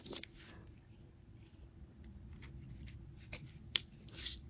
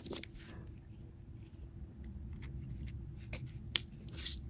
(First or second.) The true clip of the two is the second